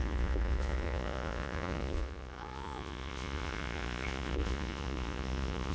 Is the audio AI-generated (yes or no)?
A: yes